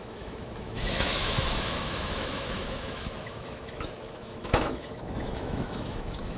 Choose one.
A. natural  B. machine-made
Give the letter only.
B